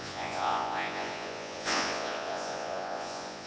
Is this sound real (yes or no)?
no